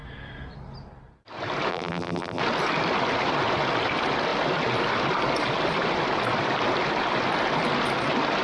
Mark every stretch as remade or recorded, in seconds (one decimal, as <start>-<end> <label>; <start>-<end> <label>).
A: 0.0-1.7 recorded; 1.7-2.4 remade; 2.4-8.4 recorded